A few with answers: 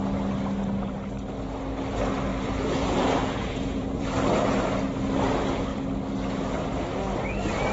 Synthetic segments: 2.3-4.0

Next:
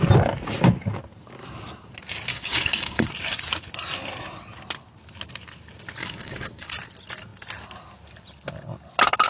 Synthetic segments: 2.3-3.1; 6.0-6.7

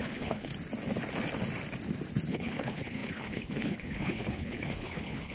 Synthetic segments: 0.0-0.5; 2.3-5.3

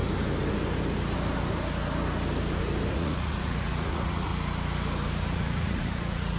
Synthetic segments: 2.9-4.3; 5.3-6.4

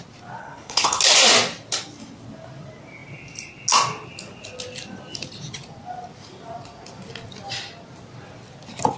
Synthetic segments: 0.4-1.0

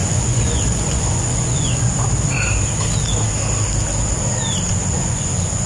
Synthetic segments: 0.0-1.9; 4.8-5.7